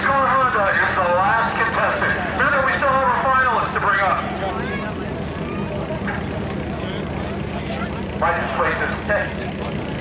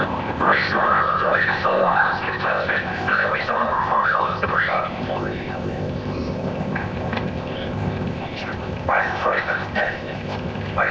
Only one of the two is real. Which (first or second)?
first